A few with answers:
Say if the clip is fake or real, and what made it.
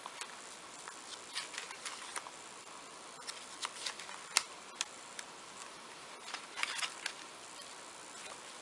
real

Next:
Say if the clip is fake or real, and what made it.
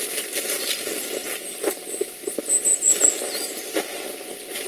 real